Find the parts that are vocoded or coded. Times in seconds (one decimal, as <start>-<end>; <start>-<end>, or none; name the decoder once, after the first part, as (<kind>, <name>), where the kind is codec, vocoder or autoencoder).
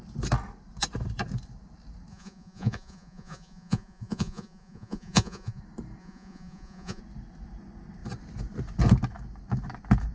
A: 2.1-5.6 (vocoder, Vocos); 6.0-7.0